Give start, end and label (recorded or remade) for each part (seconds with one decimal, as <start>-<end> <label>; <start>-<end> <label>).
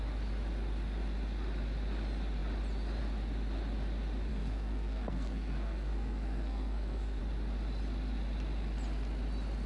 0.0-4.3 recorded; 4.3-7.2 remade; 7.2-9.7 recorded